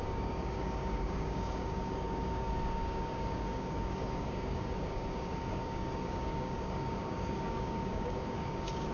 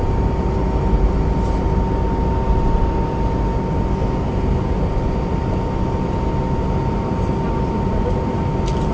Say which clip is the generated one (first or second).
first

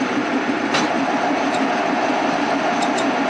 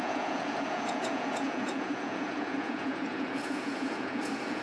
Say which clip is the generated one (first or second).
second